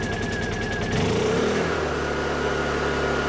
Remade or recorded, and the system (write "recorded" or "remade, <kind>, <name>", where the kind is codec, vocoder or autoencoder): recorded